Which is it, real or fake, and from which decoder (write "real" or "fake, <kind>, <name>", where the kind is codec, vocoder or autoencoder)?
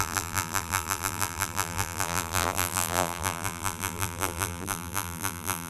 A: fake, vocoder, BigVGAN v2